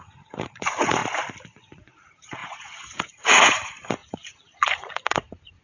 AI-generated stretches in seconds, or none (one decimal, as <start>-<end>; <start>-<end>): 0.0-1.0; 1.6-5.6